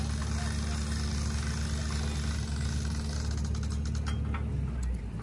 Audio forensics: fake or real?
real